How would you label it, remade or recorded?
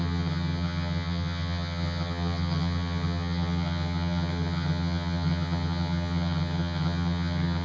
remade